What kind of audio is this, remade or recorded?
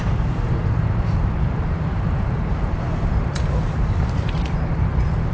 remade